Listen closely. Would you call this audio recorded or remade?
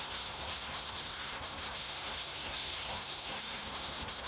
remade